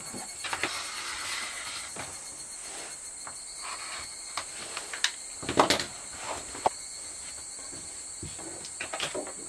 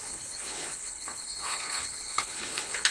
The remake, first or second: second